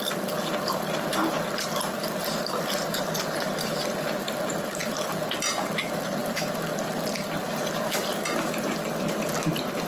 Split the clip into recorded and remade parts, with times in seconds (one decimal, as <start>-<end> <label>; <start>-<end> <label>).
0.0-9.9 recorded